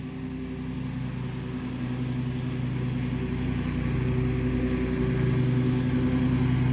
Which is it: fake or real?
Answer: real